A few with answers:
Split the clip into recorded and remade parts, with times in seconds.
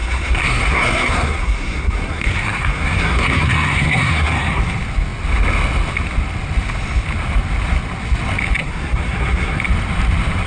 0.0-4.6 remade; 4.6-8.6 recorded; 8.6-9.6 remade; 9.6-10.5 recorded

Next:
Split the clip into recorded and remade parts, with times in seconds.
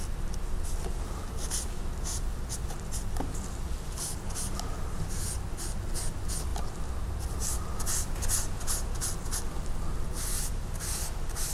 0.0-11.5 recorded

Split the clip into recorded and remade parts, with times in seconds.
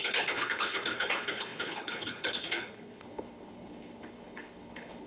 0.0-5.1 remade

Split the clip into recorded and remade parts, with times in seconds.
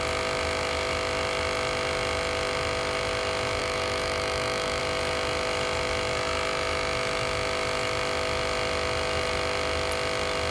0.0-3.6 recorded; 3.6-4.8 remade; 4.8-10.5 recorded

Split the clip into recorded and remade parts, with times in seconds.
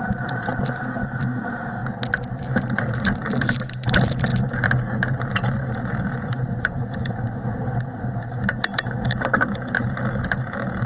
0.0-1.8 remade; 1.8-2.4 recorded; 2.4-10.9 remade